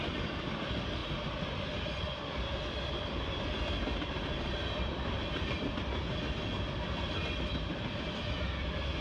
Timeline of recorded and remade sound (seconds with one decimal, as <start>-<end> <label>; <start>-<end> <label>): 0.0-9.0 recorded